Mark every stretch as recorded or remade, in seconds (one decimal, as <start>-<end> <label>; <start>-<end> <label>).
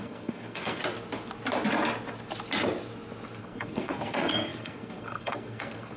0.0-0.8 remade; 0.8-3.4 recorded; 3.4-6.0 remade